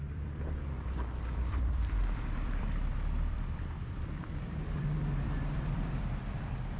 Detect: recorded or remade remade